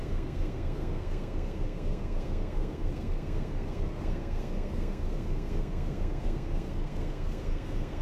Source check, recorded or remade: remade